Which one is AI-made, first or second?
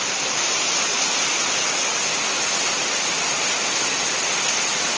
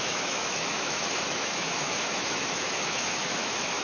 second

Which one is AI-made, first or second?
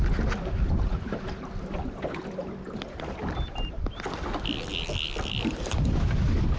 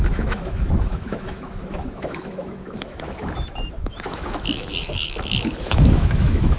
second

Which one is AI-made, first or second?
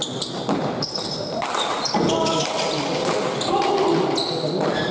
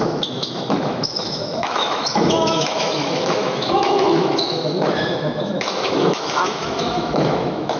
second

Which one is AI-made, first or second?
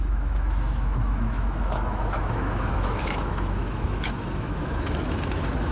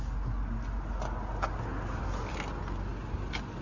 first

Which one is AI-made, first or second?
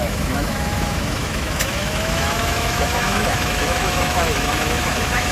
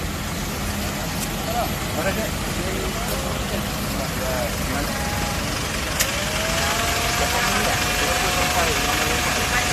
first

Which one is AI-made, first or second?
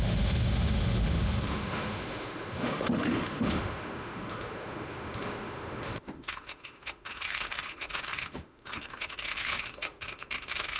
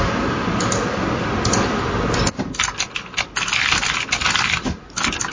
first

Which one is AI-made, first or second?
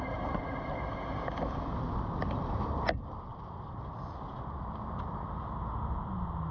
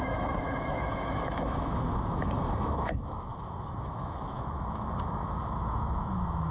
second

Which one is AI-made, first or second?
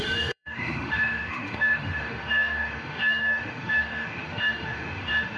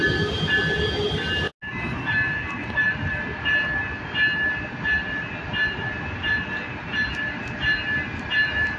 first